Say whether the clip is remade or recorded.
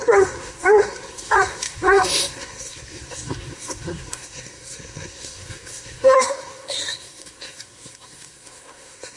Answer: remade